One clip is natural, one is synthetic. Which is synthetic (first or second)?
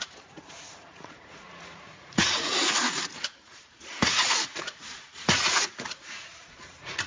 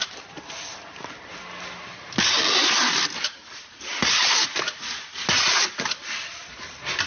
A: first